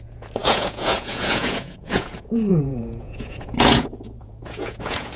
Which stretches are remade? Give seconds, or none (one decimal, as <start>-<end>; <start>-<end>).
0.0-5.2